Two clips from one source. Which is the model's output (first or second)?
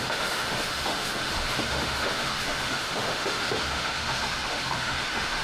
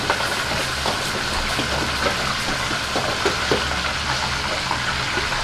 first